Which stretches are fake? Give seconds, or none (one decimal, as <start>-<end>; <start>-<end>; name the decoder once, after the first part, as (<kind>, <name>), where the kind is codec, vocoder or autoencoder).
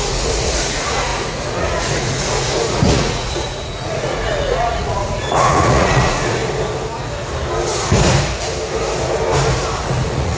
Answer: 0.0-6.4 (vocoder, Vocos); 9.8-10.4